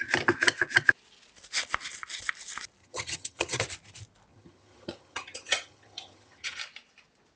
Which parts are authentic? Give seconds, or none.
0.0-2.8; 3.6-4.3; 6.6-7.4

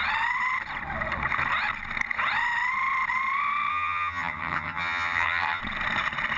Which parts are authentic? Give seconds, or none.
0.0-3.7; 5.6-6.4

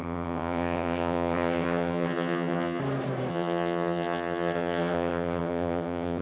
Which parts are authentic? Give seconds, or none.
2.8-3.3

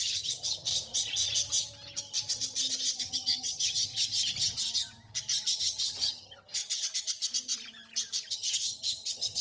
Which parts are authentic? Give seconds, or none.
0.7-3.0; 3.9-5.6; 6.6-8.3

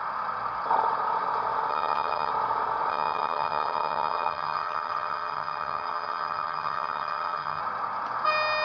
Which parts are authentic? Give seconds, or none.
0.0-1.7; 2.3-2.9; 7.6-8.6

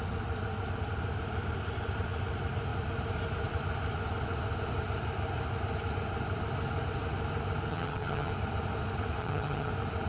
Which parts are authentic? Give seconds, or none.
0.0-7.7; 8.3-9.2; 9.7-10.1

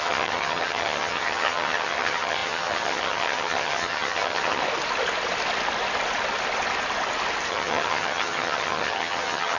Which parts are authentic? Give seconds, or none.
4.6-7.5